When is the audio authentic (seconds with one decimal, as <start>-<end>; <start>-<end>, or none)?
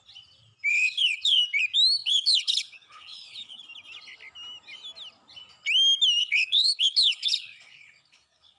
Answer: 0.0-0.7; 1.4-2.0; 3.6-6.2